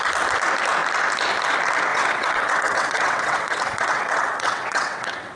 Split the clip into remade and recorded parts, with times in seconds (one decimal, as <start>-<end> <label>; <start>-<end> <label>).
0.0-1.9 recorded; 1.9-5.4 remade